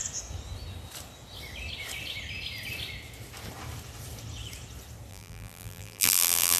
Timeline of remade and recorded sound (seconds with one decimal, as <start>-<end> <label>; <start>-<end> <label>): 0.0-5.1 recorded; 5.1-6.6 remade

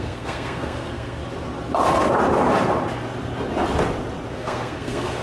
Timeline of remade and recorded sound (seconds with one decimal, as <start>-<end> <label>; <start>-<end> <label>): 0.0-1.2 remade; 1.2-4.3 recorded; 4.3-5.2 remade